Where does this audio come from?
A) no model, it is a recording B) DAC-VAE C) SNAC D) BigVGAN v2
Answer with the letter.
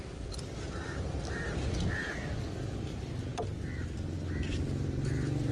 A